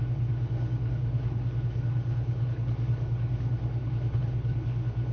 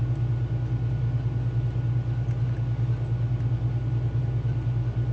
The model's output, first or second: first